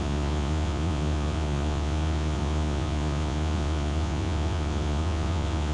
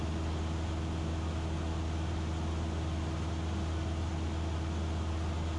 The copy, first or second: first